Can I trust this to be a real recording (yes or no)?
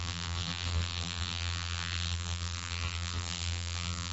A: no